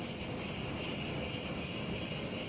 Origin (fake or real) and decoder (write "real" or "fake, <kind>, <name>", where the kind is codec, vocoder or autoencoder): real